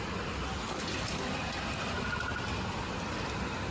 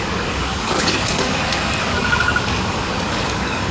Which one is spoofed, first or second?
second